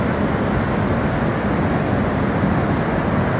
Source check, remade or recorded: recorded